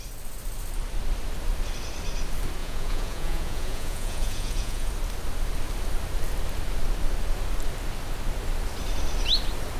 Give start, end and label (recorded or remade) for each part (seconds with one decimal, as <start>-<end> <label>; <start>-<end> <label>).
0.0-2.6 recorded; 2.6-4.9 remade; 4.9-9.8 recorded

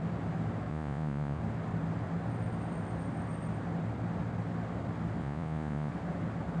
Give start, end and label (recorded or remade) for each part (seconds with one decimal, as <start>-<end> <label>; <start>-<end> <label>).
0.0-0.7 recorded; 0.7-1.4 remade; 1.4-5.2 recorded; 5.2-5.9 remade; 5.9-6.6 recorded